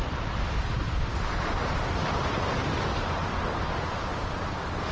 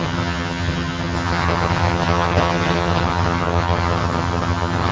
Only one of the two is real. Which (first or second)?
first